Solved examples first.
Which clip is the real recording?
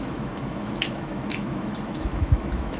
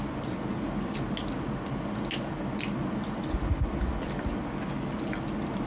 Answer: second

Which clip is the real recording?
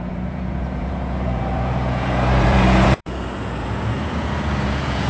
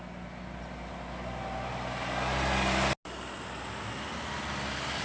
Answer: second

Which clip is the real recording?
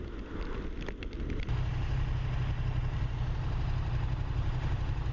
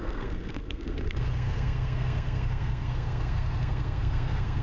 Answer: first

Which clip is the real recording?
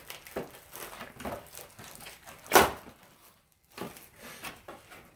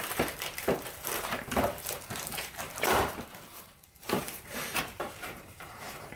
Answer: first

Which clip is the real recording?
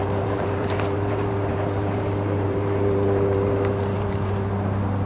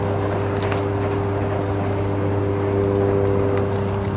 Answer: second